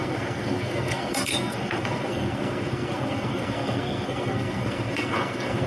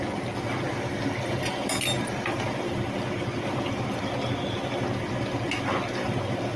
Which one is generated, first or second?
first